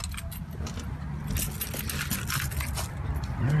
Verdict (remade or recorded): recorded